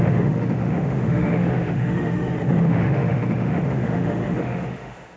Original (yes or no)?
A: no